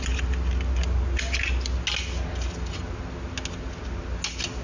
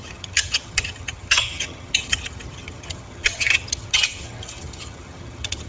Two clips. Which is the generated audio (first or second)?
second